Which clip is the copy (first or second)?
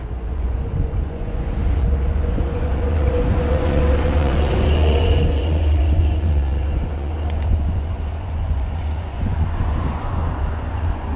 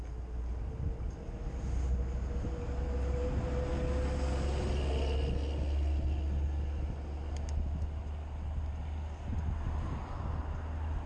first